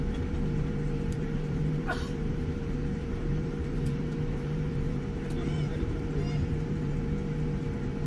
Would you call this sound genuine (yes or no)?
no